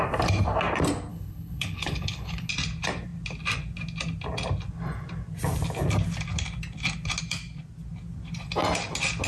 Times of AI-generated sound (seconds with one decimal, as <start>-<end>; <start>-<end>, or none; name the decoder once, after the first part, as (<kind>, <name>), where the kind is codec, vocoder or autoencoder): 1.1-2.5 (codec, HILCodec)